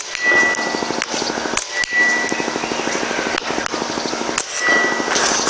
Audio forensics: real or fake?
real